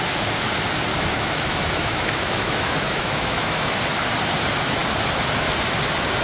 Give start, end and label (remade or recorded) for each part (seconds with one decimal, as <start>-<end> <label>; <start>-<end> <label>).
0.0-0.9 recorded; 0.9-3.8 remade; 3.8-6.2 recorded